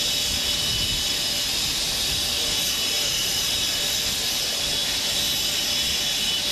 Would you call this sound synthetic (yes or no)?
no